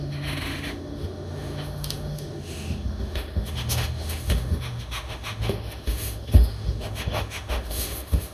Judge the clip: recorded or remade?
remade